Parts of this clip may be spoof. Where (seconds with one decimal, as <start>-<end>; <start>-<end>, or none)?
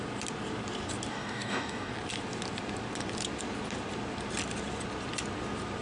1.1-1.9